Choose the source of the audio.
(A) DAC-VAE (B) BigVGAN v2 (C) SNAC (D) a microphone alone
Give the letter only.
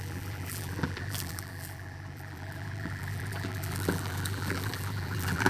B